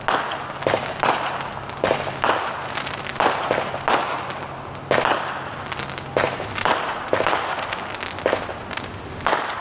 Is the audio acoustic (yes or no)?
yes